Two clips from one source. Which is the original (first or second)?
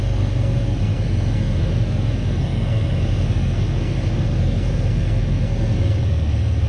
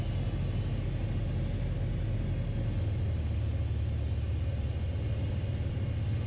second